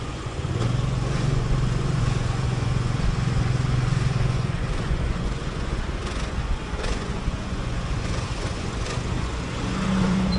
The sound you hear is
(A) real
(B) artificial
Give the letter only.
B